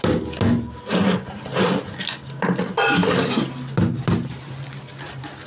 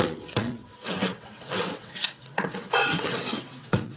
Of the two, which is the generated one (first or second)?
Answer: second